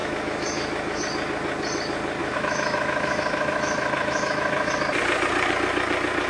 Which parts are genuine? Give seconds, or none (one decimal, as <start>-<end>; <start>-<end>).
1.0-2.2; 4.7-6.3